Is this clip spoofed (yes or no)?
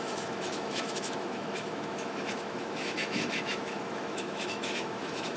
yes